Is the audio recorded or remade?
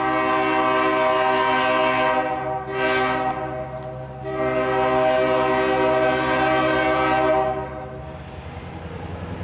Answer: recorded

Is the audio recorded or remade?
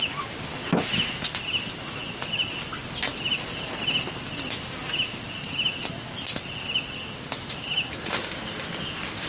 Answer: recorded